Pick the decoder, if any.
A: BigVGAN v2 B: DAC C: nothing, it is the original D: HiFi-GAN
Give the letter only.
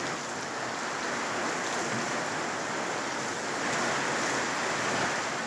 C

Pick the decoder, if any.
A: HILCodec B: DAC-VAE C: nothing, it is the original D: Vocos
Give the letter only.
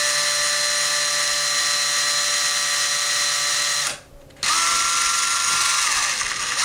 C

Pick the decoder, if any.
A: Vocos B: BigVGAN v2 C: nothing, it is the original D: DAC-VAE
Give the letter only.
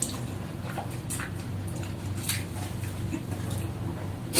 C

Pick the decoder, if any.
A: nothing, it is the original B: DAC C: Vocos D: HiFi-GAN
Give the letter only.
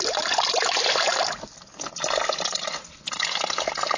A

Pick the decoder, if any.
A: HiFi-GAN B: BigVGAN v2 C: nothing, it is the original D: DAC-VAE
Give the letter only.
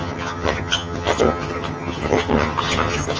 A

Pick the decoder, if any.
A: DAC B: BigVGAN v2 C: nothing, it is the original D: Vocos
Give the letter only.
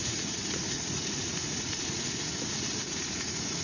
D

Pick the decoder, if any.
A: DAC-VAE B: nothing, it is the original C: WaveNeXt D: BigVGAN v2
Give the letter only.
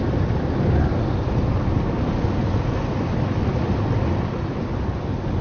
B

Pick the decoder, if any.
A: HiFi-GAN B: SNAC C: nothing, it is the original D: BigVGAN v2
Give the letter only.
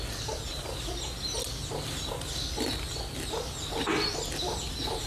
C